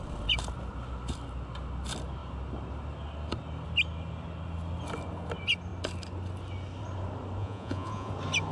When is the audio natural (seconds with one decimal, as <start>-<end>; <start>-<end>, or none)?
0.0-7.4; 8.1-8.5